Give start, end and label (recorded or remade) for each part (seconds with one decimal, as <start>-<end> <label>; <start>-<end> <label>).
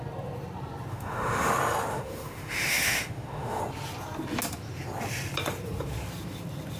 0.0-0.9 recorded; 0.9-1.5 remade; 1.5-1.9 recorded; 1.9-3.6 remade; 3.6-6.8 recorded